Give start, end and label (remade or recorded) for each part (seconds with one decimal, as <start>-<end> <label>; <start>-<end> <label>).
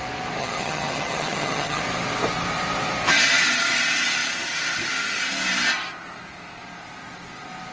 0.0-0.4 recorded; 0.4-1.8 remade; 1.8-7.7 recorded